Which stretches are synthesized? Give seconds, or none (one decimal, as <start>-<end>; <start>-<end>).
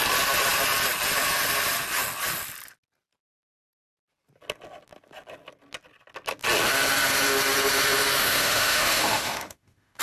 8.2-10.0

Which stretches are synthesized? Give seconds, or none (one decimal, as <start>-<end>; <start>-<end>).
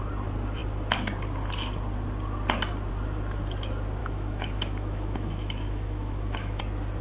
4.0-6.6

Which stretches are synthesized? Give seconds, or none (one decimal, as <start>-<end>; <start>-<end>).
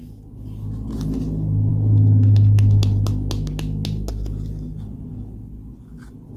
none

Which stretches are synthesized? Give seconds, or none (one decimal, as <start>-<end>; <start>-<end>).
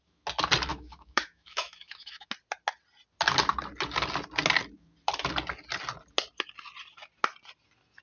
0.7-2.3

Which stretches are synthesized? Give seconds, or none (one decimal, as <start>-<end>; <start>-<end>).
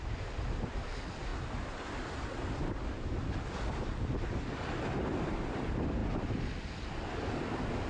none